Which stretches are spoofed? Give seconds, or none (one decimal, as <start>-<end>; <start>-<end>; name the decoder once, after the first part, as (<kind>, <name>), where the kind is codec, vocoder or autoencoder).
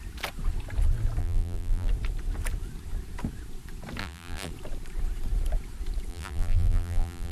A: 1.2-1.9 (vocoder, BigVGAN v2); 4.0-4.5; 6.1-7.3